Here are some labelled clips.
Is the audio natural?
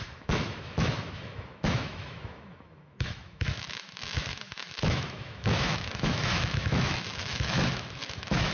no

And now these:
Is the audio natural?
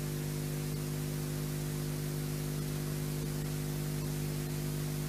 yes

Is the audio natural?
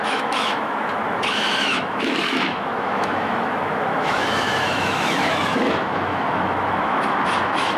no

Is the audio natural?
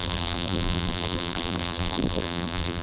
no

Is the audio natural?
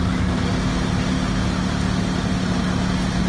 yes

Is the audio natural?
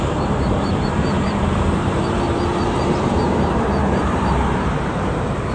no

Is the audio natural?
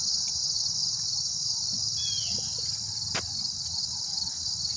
yes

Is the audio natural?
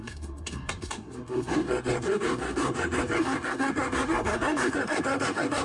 no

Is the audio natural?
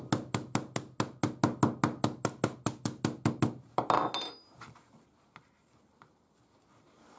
yes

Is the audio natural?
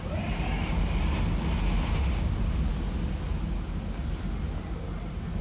yes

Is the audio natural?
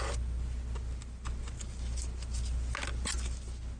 yes